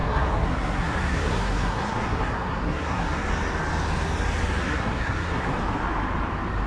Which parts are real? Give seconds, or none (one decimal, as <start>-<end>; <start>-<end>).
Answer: 3.3-4.6; 5.5-6.7